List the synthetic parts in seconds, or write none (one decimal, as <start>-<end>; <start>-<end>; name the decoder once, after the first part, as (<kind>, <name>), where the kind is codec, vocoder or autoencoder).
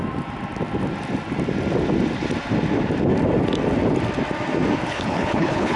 4.9-5.8 (codec, HILCodec)